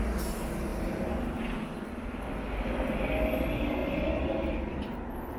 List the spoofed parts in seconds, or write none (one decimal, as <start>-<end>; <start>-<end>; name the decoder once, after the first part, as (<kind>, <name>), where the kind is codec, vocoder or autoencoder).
none